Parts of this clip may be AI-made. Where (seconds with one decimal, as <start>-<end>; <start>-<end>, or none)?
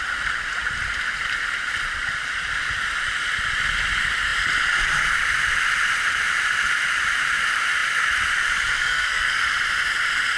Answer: 8.8-9.4